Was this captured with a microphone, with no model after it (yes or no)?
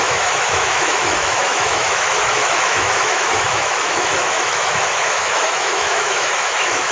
no